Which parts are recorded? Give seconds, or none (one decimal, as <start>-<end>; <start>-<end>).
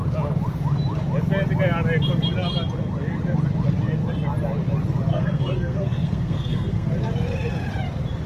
0.0-5.1; 6.9-8.3